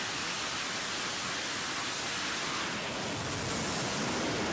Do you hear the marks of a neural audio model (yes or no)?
no